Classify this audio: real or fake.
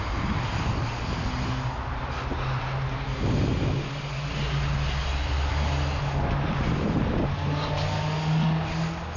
real